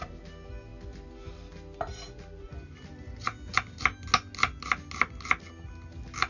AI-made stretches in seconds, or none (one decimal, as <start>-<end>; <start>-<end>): none